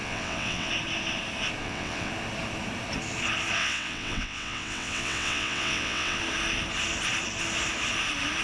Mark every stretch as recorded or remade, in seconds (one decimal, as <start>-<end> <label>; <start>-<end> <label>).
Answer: 0.0-0.7 remade; 0.7-1.6 recorded; 1.6-2.1 remade; 2.1-3.6 recorded; 3.6-6.2 remade; 6.2-8.4 recorded

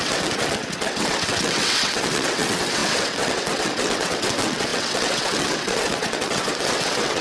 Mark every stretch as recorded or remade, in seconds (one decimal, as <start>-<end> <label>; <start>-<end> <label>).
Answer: 0.0-7.2 remade

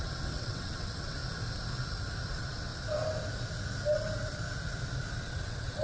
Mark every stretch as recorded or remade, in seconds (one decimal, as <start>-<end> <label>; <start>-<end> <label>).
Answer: 0.0-1.2 remade; 1.2-2.3 recorded; 2.3-2.7 remade; 2.7-5.2 recorded; 5.2-5.8 remade

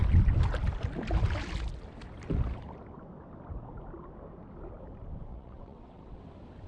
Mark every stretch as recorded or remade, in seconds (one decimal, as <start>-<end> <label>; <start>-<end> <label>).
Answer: 0.0-5.3 recorded; 5.3-6.2 remade; 6.2-6.7 recorded

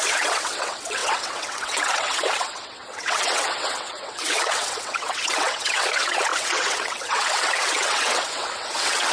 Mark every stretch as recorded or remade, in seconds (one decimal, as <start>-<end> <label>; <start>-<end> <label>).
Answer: 0.0-9.1 remade

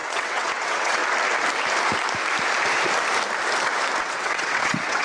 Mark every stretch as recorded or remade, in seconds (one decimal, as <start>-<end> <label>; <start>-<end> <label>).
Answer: 0.0-1.0 remade; 1.0-4.0 recorded; 4.0-5.0 remade

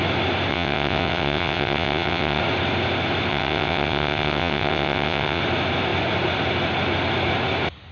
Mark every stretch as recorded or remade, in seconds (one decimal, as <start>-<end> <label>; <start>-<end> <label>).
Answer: 0.0-0.5 recorded; 0.5-2.4 remade; 2.4-3.3 recorded; 3.3-5.4 remade; 5.4-7.9 recorded